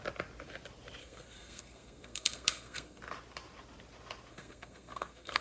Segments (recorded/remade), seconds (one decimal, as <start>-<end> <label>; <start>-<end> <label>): 0.0-1.0 recorded; 1.0-3.0 remade; 3.0-4.3 recorded; 4.3-5.4 remade